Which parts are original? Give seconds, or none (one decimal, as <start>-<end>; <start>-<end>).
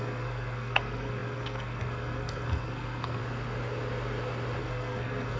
3.2-4.6